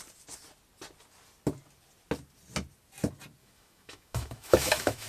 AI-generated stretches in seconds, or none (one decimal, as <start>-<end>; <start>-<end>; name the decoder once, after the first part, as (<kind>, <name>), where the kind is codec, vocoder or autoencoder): 3.4-5.1 (autoencoder, DAC-VAE)